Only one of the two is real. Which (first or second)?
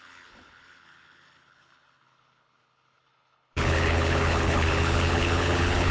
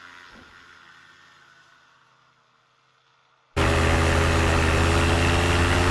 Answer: second